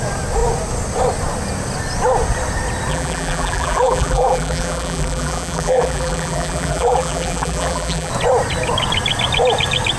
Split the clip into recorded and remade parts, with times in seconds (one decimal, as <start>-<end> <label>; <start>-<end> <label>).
0.0-2.9 recorded; 2.9-8.1 remade; 8.1-10.0 recorded